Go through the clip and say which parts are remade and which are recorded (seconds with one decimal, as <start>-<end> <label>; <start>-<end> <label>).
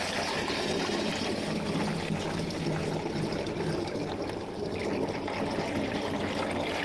0.0-6.8 recorded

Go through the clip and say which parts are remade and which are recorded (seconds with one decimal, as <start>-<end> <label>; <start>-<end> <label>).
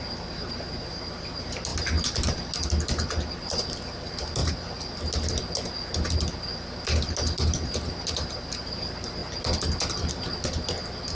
0.0-11.1 recorded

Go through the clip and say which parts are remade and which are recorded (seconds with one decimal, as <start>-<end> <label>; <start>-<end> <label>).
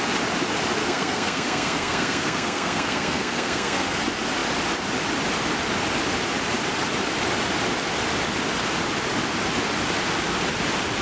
0.0-0.8 recorded; 0.8-4.0 remade; 4.0-11.0 recorded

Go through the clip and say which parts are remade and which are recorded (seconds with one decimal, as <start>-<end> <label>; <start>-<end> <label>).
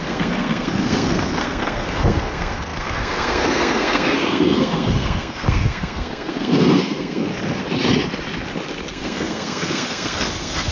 0.0-7.3 remade; 7.3-8.9 recorded; 8.9-10.7 remade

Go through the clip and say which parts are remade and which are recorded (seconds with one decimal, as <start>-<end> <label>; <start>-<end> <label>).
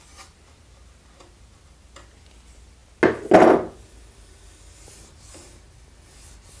0.0-6.6 recorded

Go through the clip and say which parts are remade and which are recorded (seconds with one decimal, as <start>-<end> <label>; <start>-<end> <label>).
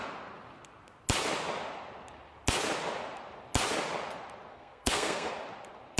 0.0-4.5 recorded; 4.5-5.3 remade; 5.3-6.0 recorded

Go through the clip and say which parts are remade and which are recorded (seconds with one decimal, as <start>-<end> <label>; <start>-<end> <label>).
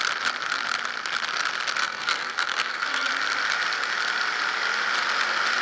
0.0-1.8 recorded; 1.8-3.1 remade; 3.1-5.6 recorded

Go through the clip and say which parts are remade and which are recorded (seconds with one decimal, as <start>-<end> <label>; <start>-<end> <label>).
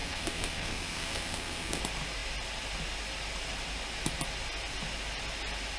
0.0-1.8 remade; 1.8-5.8 recorded